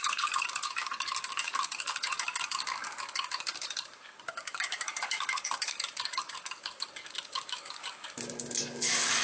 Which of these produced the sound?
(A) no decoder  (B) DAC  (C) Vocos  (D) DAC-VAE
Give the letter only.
B